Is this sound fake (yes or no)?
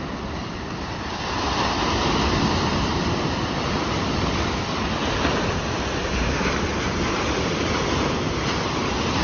yes